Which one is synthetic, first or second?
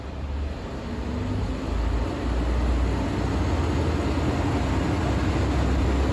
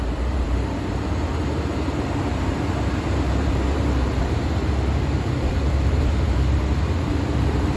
second